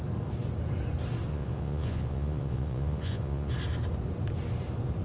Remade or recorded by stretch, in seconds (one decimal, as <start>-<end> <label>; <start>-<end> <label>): 0.0-1.3 recorded; 1.3-3.5 remade; 3.5-5.0 recorded